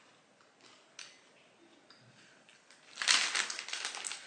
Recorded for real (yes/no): yes